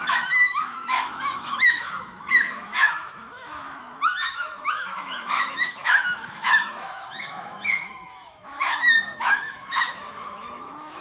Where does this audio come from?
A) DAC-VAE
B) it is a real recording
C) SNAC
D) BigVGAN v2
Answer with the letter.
A